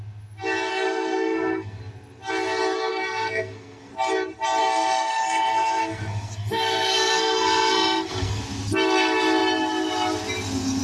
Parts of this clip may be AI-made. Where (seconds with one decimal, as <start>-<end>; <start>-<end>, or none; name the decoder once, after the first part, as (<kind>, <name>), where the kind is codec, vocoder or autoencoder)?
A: 0.7-1.8 (codec, SNAC); 2.9-3.9; 4.6-8.4